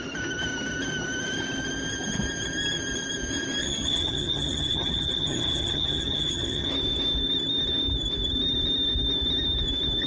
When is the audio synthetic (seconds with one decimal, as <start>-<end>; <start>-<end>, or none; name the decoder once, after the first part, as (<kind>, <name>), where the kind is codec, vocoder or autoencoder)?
3.6-6.7 (vocoder, HiFi-GAN)